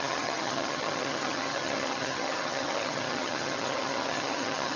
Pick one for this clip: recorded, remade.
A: remade